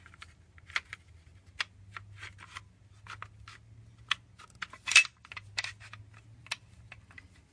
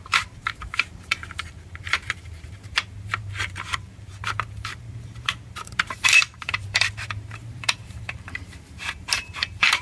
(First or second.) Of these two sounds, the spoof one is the second